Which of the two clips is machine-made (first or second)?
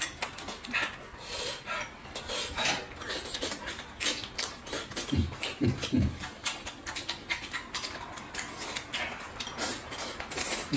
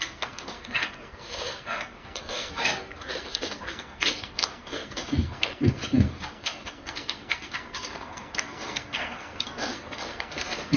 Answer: second